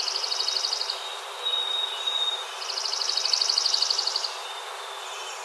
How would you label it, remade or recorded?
recorded